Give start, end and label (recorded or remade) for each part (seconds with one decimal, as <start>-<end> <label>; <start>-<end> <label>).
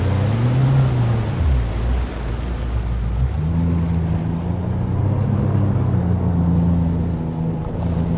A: 0.0-8.2 recorded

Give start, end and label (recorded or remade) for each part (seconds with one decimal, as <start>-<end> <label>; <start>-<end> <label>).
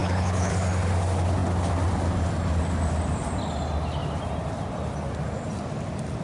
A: 0.0-0.5 remade; 0.5-6.2 recorded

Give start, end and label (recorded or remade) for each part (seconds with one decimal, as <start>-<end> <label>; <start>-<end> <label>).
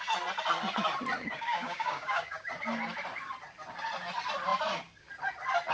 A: 0.0-1.2 recorded; 1.2-2.5 remade; 2.5-5.7 recorded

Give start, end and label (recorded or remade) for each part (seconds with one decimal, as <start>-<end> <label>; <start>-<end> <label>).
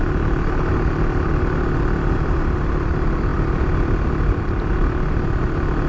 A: 0.0-5.9 recorded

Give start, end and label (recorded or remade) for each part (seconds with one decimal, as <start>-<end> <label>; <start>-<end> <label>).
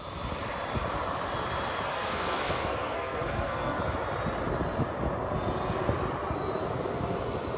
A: 0.0-1.9 recorded; 1.9-3.8 remade; 3.8-7.6 recorded